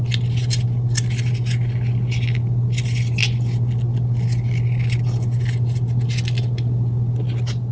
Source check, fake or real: real